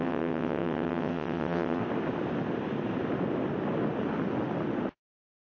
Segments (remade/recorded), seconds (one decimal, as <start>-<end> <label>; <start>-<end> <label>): 0.0-1.8 remade; 1.8-5.0 recorded; 5.0-5.4 remade